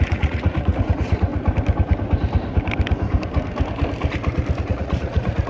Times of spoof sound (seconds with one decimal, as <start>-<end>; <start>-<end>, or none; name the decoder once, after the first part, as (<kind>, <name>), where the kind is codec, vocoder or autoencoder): 0.0-1.3 (vocoder, Vocos); 4.6-5.5